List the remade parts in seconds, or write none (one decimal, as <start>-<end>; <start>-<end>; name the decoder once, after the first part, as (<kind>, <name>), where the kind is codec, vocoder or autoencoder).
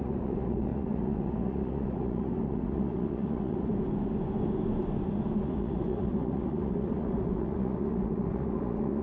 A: 0.0-3.7 (vocoder, Vocos); 5.4-9.0